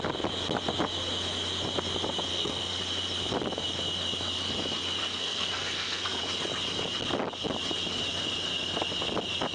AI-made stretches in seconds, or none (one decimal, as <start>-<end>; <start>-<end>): 2.3-2.8; 5.0-6.2